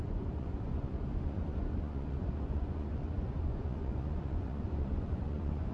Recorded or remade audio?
remade